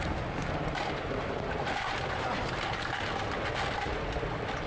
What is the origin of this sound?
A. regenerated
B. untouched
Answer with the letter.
B